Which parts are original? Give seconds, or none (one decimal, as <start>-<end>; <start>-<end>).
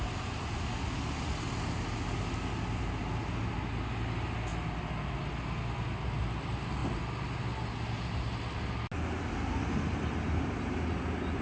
0.0-11.4